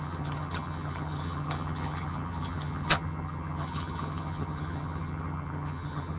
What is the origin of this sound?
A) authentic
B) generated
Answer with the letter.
B